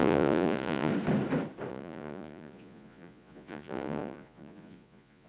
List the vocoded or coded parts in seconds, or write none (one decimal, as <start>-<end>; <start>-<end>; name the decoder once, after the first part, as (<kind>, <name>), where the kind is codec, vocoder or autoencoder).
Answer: 0.0-0.9 (vocoder, Vocos); 1.7-5.3